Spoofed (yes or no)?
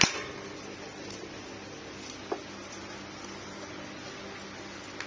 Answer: no